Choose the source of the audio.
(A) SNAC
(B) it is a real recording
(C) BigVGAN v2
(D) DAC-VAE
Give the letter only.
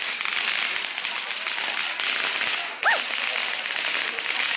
B